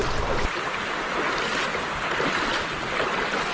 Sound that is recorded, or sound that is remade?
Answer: recorded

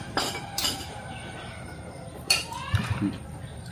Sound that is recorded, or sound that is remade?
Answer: remade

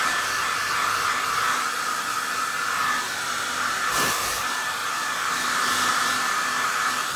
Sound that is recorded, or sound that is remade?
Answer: recorded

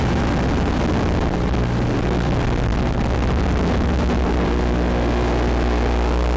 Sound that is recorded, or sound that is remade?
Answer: recorded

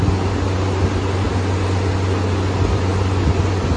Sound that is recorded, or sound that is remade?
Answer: recorded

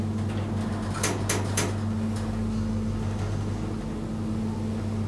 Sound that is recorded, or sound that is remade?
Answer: recorded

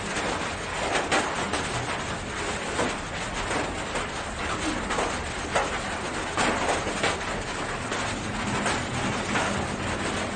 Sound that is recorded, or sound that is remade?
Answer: recorded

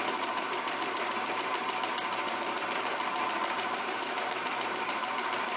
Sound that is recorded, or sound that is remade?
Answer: remade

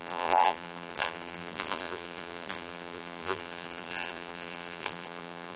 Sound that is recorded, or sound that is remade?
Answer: remade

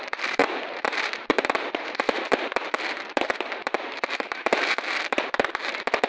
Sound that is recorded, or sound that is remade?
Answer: remade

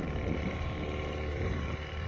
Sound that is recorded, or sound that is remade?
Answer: remade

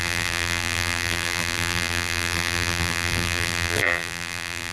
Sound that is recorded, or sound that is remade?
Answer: remade